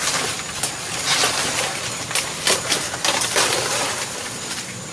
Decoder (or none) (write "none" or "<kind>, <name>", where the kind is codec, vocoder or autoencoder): none